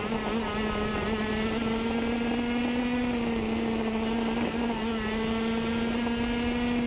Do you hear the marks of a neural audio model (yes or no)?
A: no